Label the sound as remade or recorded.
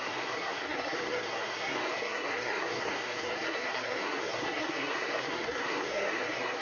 remade